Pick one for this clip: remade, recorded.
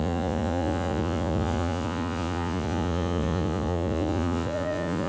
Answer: remade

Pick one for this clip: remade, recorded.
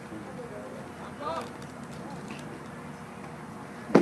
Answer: recorded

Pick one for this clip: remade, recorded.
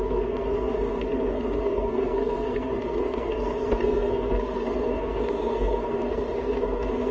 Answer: remade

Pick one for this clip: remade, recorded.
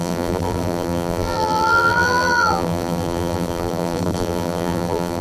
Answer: remade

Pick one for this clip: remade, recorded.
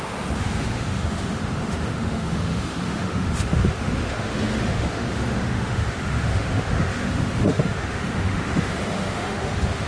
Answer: remade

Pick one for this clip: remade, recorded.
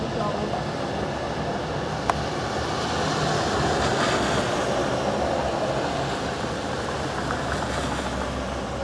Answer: recorded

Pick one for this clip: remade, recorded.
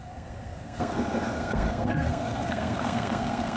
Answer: remade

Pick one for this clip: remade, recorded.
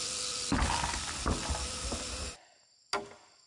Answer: recorded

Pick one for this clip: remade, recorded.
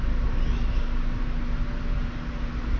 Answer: recorded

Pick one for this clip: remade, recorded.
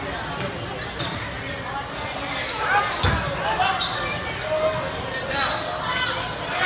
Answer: recorded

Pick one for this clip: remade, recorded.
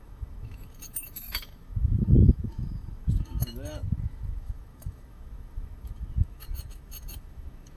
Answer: remade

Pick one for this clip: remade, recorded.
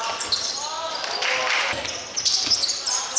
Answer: recorded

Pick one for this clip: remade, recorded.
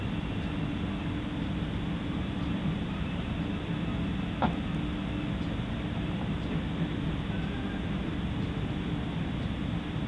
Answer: recorded